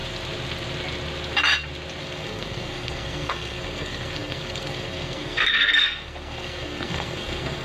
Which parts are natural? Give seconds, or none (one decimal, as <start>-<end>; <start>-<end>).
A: 0.0-2.0